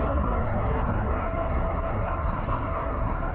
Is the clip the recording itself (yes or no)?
no